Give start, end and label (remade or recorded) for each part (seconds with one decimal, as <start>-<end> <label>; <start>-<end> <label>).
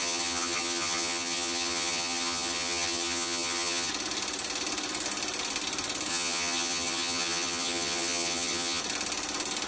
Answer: 0.0-3.9 remade; 3.9-6.1 recorded; 6.1-8.8 remade; 8.8-9.7 recorded